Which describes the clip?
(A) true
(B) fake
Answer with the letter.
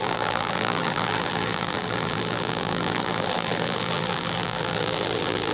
B